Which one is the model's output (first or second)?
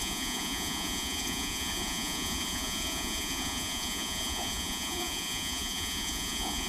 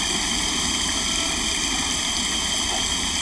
first